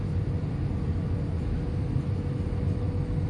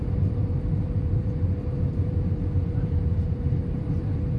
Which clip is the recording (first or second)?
first